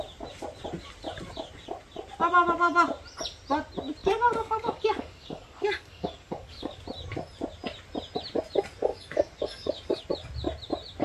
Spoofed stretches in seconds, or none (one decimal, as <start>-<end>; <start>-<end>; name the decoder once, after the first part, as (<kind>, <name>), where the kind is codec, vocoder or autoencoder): 4.0-6.8 (codec, DAC); 8.9-10.0